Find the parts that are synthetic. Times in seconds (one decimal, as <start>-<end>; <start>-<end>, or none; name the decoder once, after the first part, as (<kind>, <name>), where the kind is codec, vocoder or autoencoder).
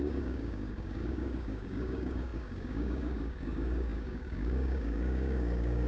0.0-5.9 (codec, DAC)